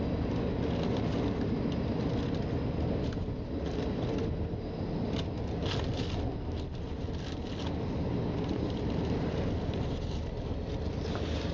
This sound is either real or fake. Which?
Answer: real